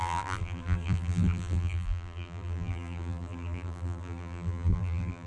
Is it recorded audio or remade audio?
remade